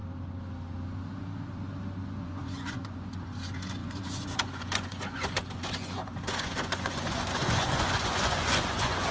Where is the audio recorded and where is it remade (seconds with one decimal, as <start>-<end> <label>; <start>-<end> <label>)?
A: 0.0-2.2 recorded; 2.2-9.1 remade

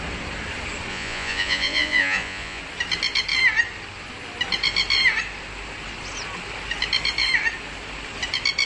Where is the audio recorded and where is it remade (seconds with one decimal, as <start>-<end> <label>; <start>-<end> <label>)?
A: 0.0-0.9 recorded; 0.9-2.6 remade; 2.6-8.7 recorded

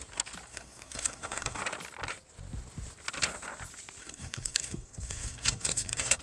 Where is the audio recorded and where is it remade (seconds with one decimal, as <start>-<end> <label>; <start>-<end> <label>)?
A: 0.0-0.5 recorded; 0.5-1.6 remade; 1.6-4.0 recorded; 4.0-6.2 remade